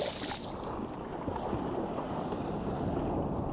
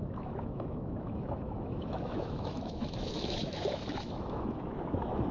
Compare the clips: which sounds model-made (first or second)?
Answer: second